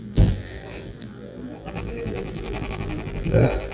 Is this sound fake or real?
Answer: fake